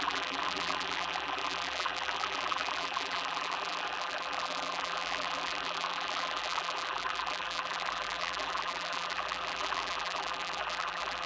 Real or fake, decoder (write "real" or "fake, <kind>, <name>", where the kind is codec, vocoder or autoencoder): fake, vocoder, BigVGAN v2